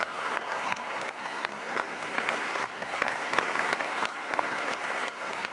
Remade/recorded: remade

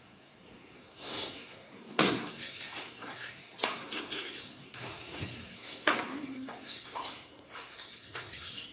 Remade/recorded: remade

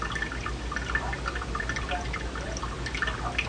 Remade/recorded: recorded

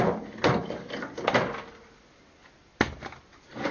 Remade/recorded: recorded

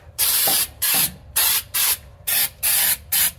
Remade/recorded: remade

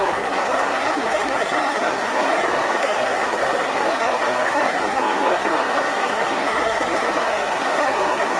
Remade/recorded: remade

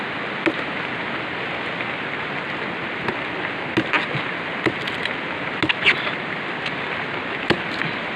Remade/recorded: recorded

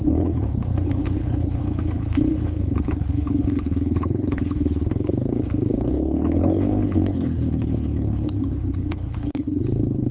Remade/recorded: remade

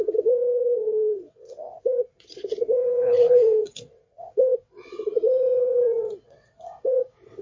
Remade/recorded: remade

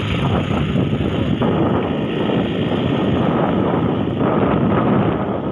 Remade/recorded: recorded